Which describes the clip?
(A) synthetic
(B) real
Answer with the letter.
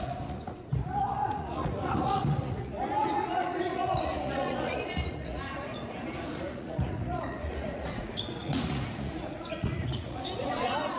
A